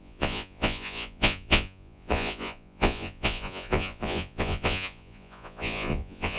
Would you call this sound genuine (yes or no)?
no